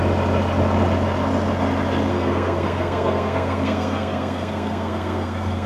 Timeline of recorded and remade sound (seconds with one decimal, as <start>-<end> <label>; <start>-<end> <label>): 0.0-2.1 recorded; 2.1-5.7 remade